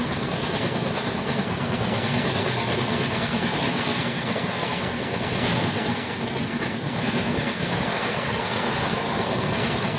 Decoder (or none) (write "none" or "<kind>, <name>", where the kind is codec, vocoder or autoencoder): codec, SNAC